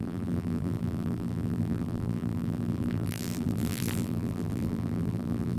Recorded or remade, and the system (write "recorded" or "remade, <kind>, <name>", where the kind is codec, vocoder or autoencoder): remade, vocoder, BigVGAN v2